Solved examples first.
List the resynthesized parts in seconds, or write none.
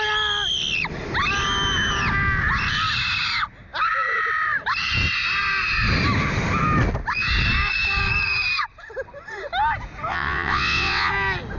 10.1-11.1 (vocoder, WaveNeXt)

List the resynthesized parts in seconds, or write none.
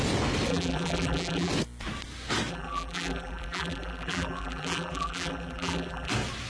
0.5-1.5 (vocoder, BigVGAN v2); 2.5-6.1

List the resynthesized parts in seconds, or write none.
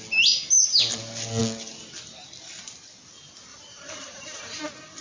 3.5-4.6 (vocoder, BigVGAN v2)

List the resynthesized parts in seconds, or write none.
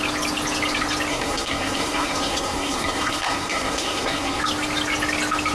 1.1-4.4 (codec, SNAC)